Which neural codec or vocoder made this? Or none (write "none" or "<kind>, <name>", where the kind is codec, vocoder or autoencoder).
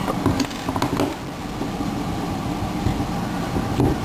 none